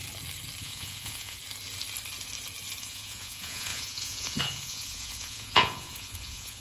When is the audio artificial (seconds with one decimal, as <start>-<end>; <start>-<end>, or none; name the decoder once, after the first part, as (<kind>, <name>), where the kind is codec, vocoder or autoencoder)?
0.6-1.4 (vocoder, Vocos); 2.8-6.6